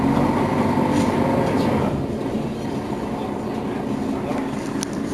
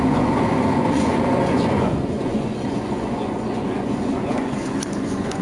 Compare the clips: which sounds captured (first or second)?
first